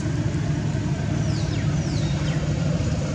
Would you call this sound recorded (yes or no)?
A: yes